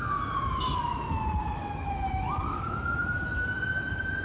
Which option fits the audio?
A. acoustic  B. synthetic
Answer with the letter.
B